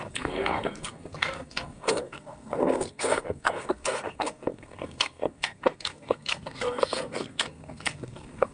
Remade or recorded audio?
remade